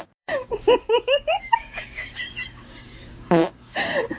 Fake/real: fake